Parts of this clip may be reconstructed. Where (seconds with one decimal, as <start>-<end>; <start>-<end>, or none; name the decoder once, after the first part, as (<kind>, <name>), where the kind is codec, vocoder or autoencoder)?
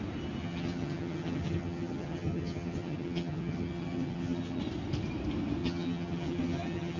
0.4-4.6 (vocoder, HiFi-GAN); 5.6-7.0